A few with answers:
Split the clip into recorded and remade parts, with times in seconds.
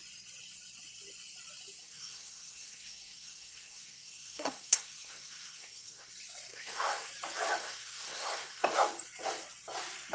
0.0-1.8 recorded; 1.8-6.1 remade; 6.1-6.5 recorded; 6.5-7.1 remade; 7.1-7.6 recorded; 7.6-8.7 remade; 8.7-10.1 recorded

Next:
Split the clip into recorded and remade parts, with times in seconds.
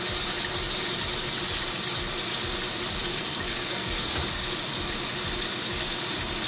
0.0-3.1 recorded; 3.1-4.1 remade; 4.1-6.5 recorded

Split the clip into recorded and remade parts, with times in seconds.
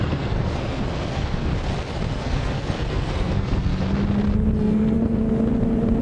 0.0-1.5 remade; 1.5-2.1 recorded; 2.1-3.7 remade; 3.7-4.6 recorded; 4.6-5.2 remade; 5.2-6.0 recorded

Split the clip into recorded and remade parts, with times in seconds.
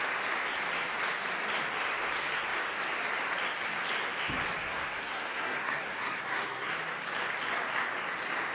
0.0-4.6 recorded; 4.6-6.7 remade; 6.7-8.5 recorded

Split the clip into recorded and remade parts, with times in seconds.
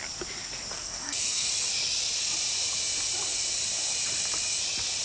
0.0-0.7 recorded; 0.7-1.5 remade; 1.5-5.0 recorded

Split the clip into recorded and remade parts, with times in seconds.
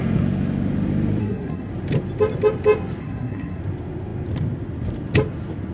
0.0-1.2 recorded; 1.2-1.7 remade; 1.7-3.0 recorded; 3.0-3.6 remade; 3.6-5.7 recorded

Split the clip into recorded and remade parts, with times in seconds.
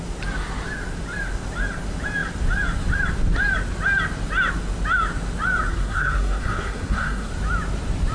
0.0-5.7 recorded; 5.7-7.3 remade; 7.3-8.1 recorded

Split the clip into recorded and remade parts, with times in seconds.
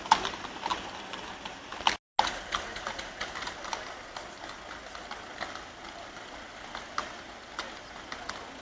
0.0-8.6 recorded